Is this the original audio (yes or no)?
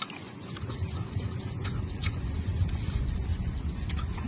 no